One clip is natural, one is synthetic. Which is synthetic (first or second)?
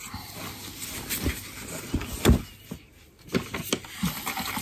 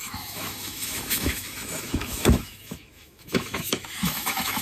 second